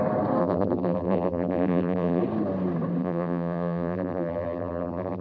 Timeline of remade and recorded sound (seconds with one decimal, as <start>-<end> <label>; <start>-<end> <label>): 0.0-0.4 recorded; 0.4-2.2 remade; 2.2-3.0 recorded; 3.0-5.2 remade